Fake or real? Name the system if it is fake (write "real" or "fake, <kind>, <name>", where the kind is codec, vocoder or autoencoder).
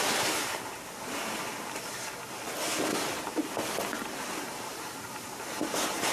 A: real